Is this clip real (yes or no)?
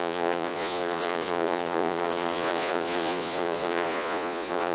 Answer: no